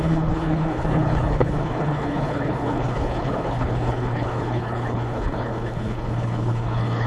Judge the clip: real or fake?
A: fake